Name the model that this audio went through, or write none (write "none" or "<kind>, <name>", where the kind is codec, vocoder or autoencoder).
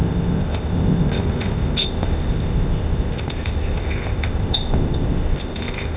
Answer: codec, ZipCodec